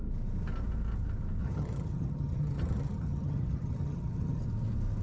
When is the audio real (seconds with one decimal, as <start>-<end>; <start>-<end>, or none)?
0.0-1.4; 4.4-5.0